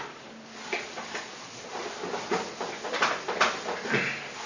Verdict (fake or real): real